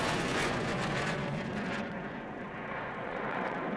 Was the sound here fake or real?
fake